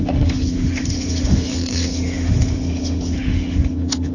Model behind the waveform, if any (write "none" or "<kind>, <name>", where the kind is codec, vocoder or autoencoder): autoencoder, DAC-VAE